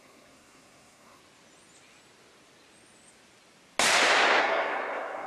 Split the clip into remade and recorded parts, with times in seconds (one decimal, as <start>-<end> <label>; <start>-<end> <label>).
0.0-1.2 remade; 1.2-4.4 recorded; 4.4-5.3 remade